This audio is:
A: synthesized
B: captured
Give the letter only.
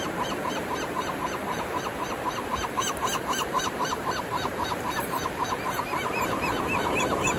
A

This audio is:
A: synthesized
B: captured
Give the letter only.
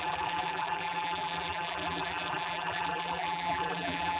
A